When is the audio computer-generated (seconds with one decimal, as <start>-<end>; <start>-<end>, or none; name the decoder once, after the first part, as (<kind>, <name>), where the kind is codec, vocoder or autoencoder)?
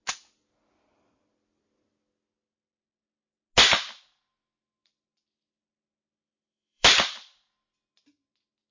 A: 4.8-7.9 (vocoder, BigVGAN v2)